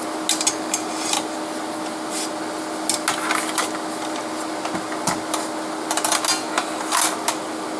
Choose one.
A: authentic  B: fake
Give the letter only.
A